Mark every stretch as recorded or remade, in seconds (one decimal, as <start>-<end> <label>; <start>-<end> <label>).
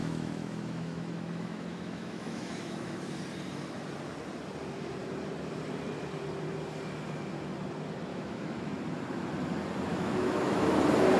0.0-3.2 remade; 3.2-8.1 recorded; 8.1-8.7 remade; 8.7-9.9 recorded; 9.9-10.7 remade; 10.7-11.2 recorded